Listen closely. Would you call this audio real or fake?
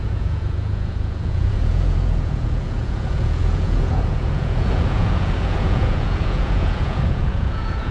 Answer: fake